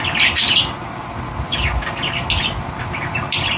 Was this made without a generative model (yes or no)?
yes